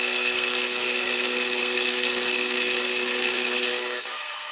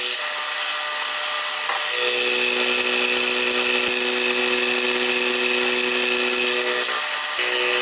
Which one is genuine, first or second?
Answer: second